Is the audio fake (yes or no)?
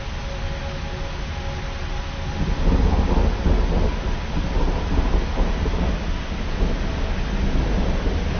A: no